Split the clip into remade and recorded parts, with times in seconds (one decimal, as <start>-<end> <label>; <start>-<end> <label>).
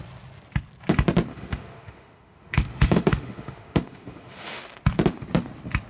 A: 0.0-1.3 recorded; 1.3-4.8 remade; 4.8-5.9 recorded